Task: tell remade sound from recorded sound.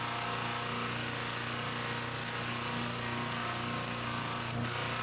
recorded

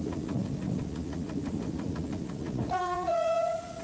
remade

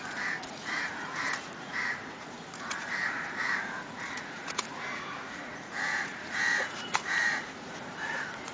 remade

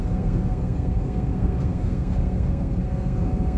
remade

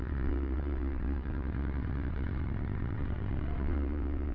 remade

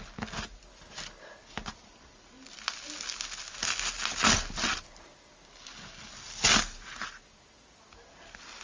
recorded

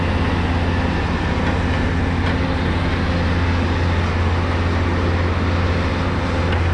recorded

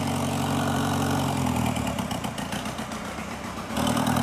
remade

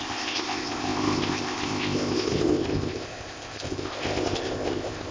remade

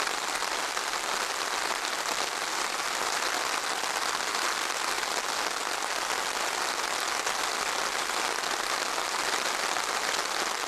recorded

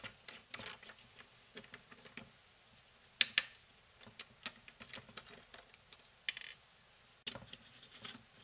recorded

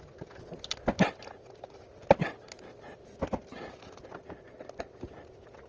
recorded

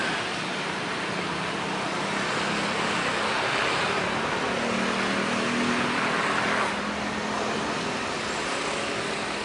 recorded